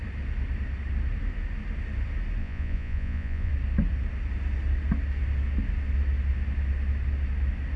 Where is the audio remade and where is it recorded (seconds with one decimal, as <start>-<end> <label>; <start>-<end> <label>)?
0.0-2.4 recorded; 2.4-3.5 remade; 3.5-7.8 recorded